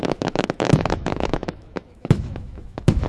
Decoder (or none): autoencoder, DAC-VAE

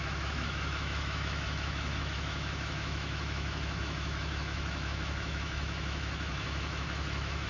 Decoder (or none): autoencoder, DAC-VAE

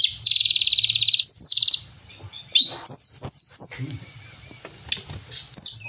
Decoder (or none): none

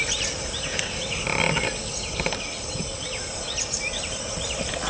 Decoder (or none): none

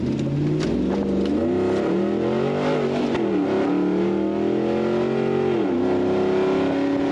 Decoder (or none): none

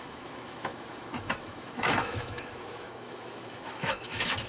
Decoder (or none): autoencoder, DAC-VAE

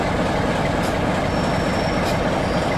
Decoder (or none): none